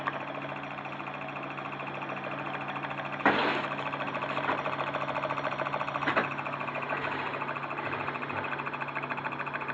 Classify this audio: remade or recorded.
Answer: recorded